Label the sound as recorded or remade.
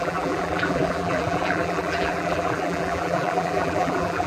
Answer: remade